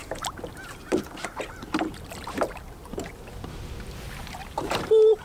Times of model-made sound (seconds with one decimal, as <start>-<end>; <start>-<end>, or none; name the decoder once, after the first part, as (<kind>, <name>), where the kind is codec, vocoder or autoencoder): 0.0-3.1 (vocoder, BigVGAN v2); 4.4-5.2